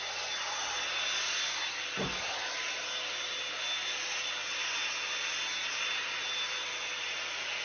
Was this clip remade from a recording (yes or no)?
no